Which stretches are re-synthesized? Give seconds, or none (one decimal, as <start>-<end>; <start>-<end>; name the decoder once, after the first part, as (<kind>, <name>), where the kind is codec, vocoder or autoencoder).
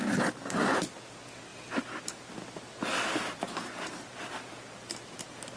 none